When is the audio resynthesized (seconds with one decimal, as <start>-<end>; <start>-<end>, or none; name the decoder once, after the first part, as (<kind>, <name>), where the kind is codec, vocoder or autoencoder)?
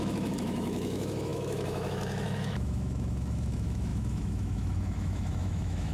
0.0-5.9 (autoencoder, DAC-VAE)